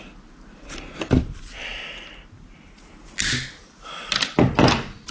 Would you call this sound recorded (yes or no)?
yes